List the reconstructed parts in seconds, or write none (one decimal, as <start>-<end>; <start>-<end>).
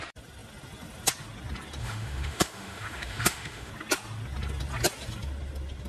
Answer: 1.8-3.7